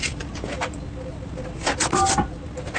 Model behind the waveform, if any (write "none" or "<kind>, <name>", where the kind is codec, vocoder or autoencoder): none